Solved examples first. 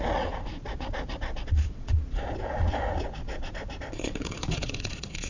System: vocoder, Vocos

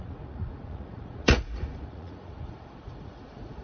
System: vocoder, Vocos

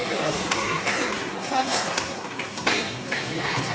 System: codec, SNAC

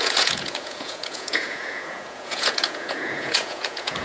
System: vocoder, Vocos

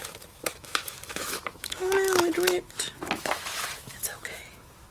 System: autoencoder, DAC-VAE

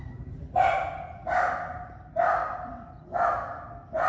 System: none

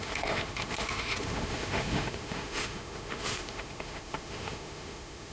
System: autoencoder, DAC-VAE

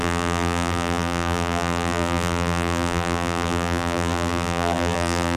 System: vocoder, BigVGAN v2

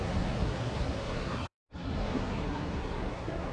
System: codec, SNAC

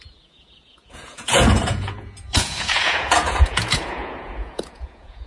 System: vocoder, Vocos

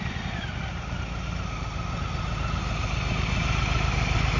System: none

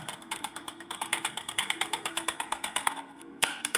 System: codec, SNAC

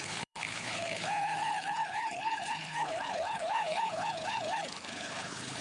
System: codec, HILCodec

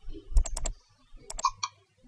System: none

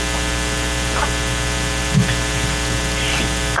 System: none